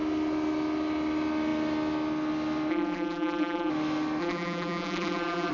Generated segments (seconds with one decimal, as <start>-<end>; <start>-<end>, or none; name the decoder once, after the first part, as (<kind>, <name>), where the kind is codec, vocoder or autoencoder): 2.7-3.7 (vocoder, BigVGAN v2); 4.2-5.5